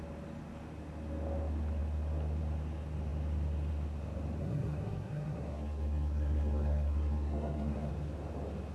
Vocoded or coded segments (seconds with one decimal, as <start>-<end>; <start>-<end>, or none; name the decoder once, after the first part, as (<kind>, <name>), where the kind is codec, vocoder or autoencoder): 4.4-7.9 (codec, SNAC)